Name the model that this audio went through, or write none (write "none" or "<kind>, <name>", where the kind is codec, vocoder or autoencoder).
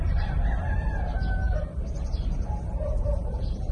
none